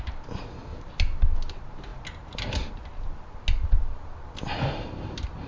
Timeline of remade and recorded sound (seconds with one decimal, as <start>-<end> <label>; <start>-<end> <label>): 0.0-5.5 recorded